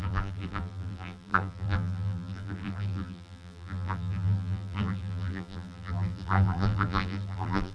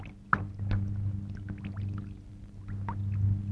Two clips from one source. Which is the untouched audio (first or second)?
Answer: second